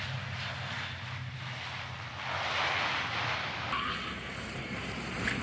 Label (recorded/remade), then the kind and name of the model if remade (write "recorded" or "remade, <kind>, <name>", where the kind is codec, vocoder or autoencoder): recorded